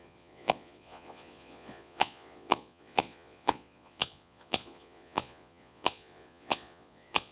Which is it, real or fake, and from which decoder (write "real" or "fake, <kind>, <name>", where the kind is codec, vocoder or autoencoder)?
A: fake, vocoder, Vocos